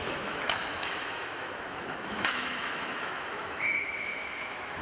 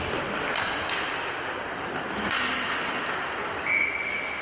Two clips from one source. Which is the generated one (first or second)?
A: first